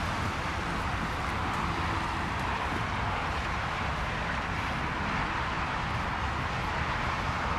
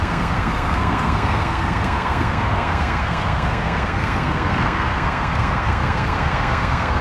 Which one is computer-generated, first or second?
second